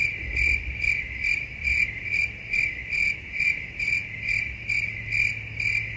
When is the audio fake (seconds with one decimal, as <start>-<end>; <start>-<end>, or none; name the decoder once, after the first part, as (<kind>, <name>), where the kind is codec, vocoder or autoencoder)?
none